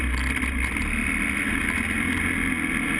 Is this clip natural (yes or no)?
yes